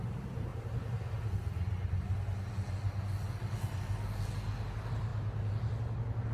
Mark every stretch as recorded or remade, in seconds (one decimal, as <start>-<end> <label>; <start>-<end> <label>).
0.0-6.3 recorded